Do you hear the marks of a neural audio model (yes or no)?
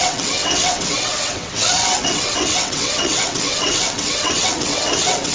yes